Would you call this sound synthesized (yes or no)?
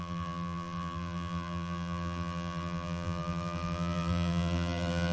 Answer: yes